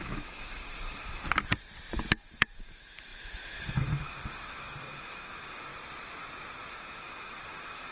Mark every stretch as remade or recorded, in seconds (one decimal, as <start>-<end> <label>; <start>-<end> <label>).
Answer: 0.0-0.6 remade; 0.6-2.1 recorded; 2.1-5.7 remade; 5.7-6.7 recorded; 6.7-7.9 remade